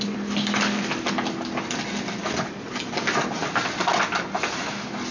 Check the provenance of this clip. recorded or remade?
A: recorded